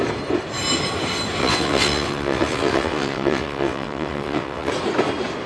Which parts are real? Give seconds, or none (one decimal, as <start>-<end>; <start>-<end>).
0.0-1.4; 4.7-5.5